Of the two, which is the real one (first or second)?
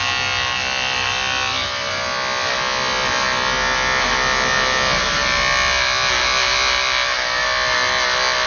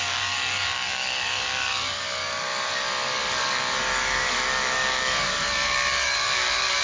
first